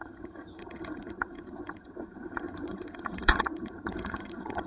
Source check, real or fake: fake